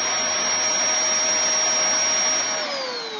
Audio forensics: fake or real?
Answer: real